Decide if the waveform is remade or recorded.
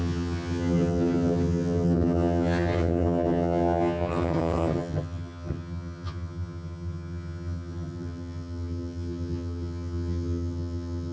remade